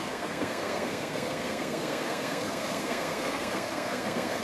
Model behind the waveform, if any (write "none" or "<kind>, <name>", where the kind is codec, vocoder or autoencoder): codec, SNAC